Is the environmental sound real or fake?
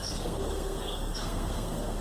fake